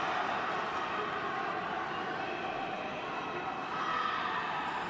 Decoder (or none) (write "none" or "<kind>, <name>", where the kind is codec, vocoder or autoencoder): none